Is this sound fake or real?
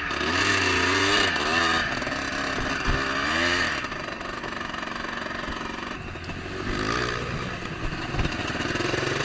real